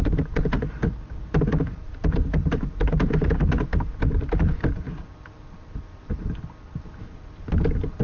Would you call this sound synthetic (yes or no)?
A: yes